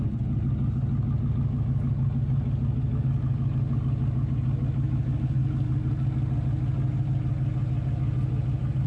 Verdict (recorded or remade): recorded